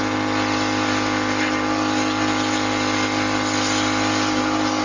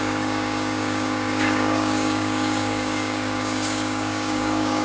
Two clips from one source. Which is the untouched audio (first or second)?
first